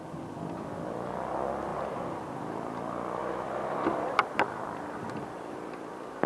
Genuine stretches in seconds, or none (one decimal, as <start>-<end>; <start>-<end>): 0.0-6.3